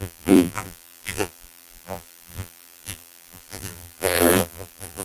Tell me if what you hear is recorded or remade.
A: remade